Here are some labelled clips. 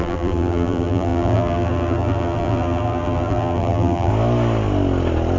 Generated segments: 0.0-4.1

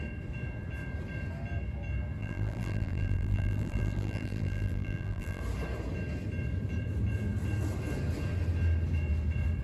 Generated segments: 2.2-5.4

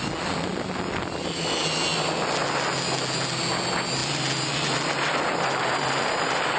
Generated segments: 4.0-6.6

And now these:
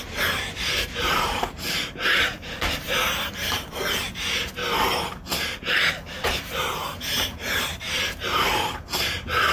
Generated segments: 0.0-4.6; 5.9-9.5